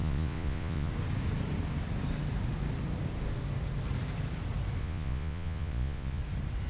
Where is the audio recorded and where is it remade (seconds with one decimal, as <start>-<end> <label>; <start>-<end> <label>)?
0.0-0.9 remade; 0.9-4.8 recorded; 4.8-6.2 remade; 6.2-6.7 recorded